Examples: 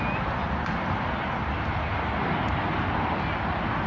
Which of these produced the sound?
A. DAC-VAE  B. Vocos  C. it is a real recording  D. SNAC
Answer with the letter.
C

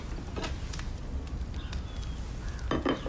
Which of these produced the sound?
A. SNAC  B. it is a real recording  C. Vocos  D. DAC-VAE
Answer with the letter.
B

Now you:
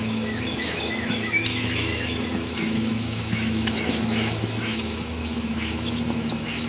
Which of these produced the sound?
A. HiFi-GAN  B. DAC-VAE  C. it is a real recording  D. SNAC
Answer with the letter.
B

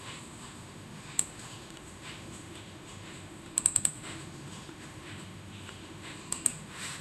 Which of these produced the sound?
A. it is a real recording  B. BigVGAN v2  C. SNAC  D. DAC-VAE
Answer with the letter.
D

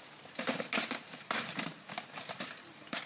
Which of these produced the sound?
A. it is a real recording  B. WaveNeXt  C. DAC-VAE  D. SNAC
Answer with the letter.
A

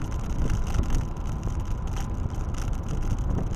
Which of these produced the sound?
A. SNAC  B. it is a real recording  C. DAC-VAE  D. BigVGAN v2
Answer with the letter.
B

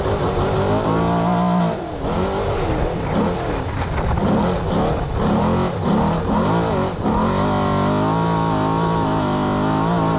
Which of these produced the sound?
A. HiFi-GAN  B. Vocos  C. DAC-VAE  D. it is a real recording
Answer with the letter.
D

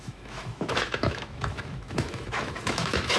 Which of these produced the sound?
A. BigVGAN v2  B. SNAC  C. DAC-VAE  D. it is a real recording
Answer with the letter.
C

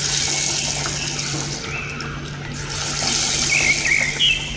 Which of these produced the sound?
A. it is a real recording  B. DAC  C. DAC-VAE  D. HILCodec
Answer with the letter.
A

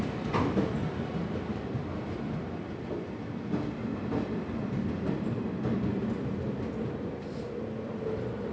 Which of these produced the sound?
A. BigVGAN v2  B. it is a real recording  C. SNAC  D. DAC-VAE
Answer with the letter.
B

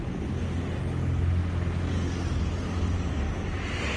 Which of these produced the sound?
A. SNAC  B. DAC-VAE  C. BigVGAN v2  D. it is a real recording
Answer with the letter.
D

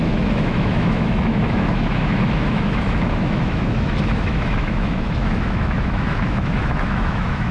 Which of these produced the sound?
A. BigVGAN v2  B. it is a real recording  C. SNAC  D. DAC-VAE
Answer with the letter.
D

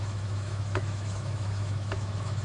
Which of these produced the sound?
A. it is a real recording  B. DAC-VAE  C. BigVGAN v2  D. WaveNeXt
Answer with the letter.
B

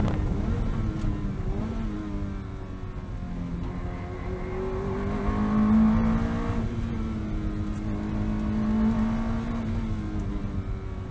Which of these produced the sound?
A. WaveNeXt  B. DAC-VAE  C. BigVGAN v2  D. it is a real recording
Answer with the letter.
D